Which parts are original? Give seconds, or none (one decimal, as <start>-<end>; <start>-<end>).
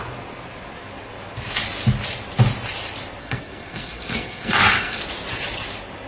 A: 0.0-3.2; 5.0-6.1